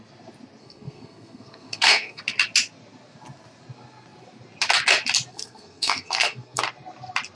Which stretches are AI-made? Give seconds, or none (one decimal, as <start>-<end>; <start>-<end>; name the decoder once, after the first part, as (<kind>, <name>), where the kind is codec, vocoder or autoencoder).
0.6-2.2 (codec, SNAC); 5.3-6.6